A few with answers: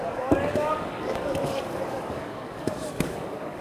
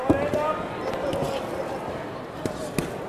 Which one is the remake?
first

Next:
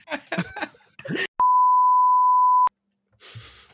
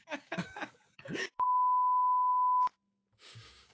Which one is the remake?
second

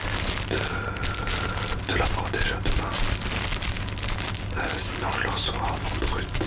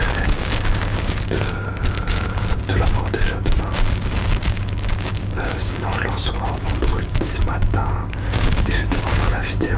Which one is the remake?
second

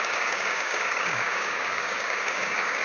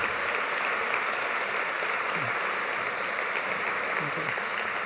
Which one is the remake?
first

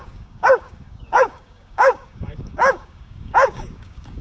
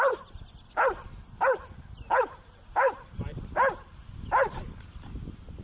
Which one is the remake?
first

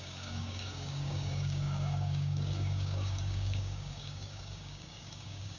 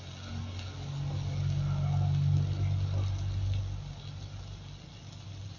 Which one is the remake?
first